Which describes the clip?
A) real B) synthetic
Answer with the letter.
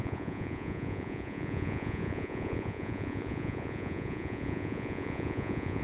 B